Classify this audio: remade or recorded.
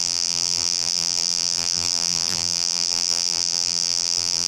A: remade